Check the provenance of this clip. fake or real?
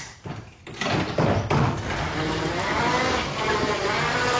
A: real